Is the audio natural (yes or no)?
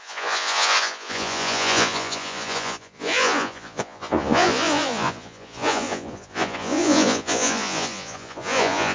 no